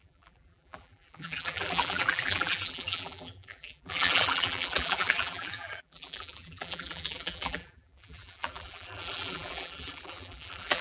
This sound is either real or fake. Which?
fake